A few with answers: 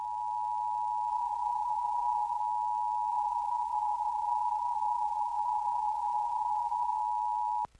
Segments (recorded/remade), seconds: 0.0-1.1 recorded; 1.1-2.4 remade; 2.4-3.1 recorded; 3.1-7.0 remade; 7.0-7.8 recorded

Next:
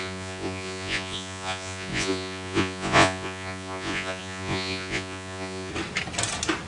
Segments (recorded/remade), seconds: 0.0-5.7 remade; 5.7-6.7 recorded